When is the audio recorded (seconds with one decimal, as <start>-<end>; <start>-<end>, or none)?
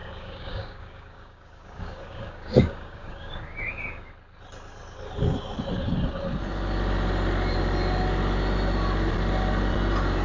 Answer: 4.1-10.2